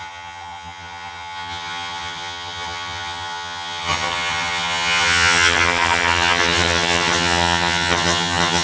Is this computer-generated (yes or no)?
yes